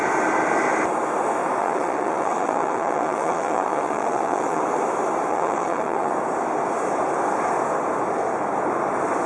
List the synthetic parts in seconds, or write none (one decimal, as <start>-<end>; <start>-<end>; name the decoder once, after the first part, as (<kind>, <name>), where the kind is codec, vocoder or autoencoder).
1.6-4.6 (vocoder, Vocos); 5.3-6.1